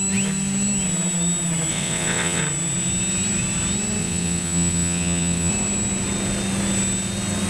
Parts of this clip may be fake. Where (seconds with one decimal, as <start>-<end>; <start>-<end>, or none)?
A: 1.7-2.4; 4.0-5.5